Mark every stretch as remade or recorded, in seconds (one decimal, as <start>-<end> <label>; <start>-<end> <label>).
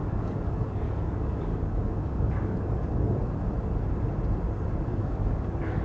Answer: 0.0-3.3 remade; 3.3-4.9 recorded; 4.9-5.8 remade